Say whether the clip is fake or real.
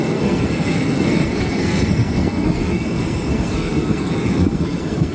fake